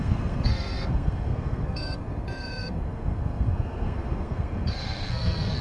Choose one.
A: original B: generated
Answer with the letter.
B